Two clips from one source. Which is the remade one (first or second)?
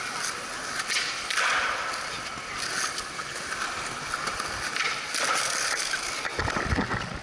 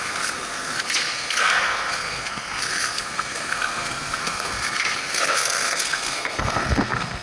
second